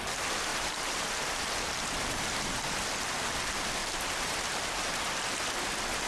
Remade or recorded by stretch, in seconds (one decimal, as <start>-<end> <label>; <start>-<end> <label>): 0.0-0.5 recorded; 0.5-2.9 remade; 2.9-3.8 recorded; 3.8-4.4 remade; 4.4-6.1 recorded